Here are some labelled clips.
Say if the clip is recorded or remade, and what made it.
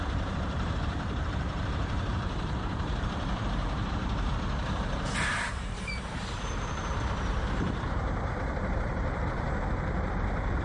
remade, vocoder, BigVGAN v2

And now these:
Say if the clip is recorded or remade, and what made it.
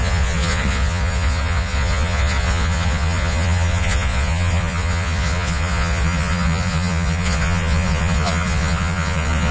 remade, vocoder, Vocos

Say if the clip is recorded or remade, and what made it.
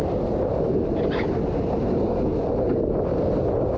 recorded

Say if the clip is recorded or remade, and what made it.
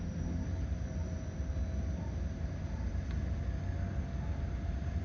recorded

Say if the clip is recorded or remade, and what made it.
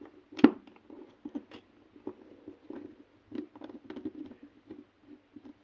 recorded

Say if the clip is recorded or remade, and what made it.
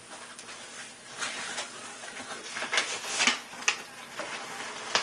recorded